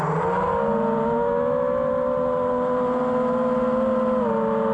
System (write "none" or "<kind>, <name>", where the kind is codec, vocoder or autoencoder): none